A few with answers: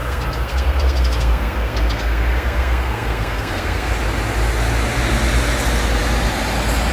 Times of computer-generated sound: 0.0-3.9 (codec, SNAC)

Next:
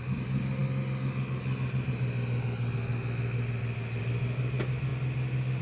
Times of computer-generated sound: none

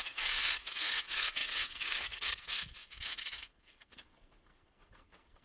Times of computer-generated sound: 0.0-5.4 (codec, SNAC)

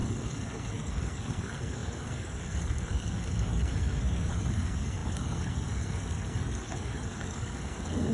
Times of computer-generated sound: 0.0-8.1 (codec, SNAC)

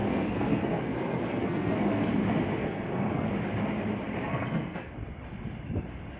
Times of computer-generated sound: 0.0-2.1 (codec, SNAC); 2.6-3.3; 4.3-4.9

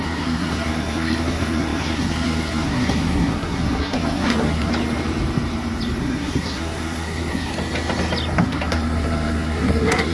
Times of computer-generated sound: 0.0-4.7 (codec, SNAC); 6.0-7.5; 8.4-10.1

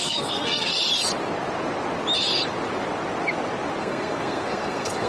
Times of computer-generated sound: 0.0-0.7 (codec, SNAC); 3.8-5.1